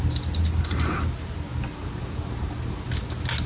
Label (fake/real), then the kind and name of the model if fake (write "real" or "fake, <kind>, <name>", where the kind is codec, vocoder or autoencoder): real